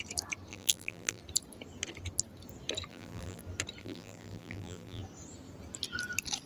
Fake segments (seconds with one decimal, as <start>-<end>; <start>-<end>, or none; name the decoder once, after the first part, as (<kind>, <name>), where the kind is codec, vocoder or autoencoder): 0.5-1.2 (vocoder, BigVGAN v2); 2.9-3.4; 3.8-5.0